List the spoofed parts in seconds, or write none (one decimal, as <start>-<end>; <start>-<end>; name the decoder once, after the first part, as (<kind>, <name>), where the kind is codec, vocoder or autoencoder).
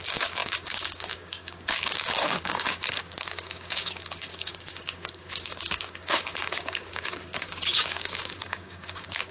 0.0-9.3 (codec, DAC)